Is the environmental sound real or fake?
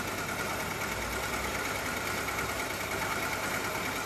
real